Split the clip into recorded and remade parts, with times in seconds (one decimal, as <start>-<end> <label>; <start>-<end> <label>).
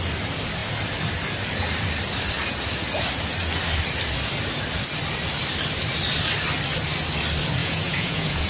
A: 0.0-7.6 recorded; 7.6-8.5 remade